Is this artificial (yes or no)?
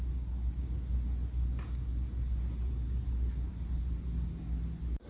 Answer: no